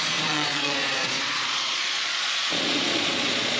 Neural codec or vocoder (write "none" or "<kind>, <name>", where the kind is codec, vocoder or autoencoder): vocoder, Vocos